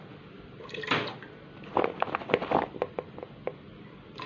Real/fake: real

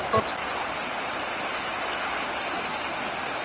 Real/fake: real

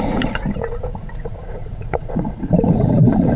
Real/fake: fake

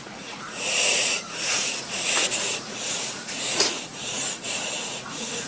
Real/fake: fake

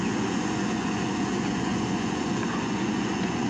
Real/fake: fake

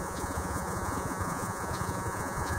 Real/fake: fake